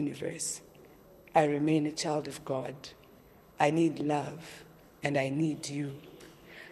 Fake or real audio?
fake